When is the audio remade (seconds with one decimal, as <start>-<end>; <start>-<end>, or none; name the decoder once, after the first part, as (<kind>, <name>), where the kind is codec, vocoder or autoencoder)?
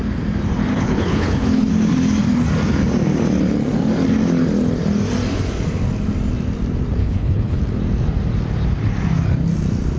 0.7-1.7 (codec, HILCodec); 7.0-7.6